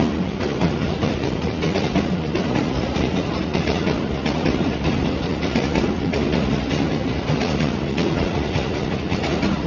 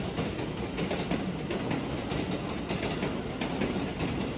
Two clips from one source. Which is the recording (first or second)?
second